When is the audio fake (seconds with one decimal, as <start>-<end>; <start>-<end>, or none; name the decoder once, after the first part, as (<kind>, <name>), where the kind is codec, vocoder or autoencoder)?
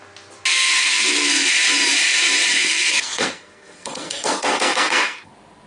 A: 0.5-1.5 (codec, SNAC); 2.5-5.3